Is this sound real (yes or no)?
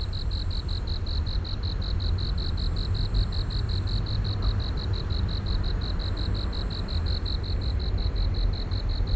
yes